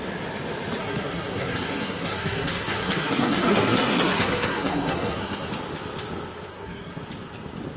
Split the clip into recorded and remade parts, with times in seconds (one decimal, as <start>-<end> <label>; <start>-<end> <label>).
0.0-0.8 recorded; 0.8-5.5 remade; 5.5-6.5 recorded; 6.5-7.0 remade; 7.0-7.8 recorded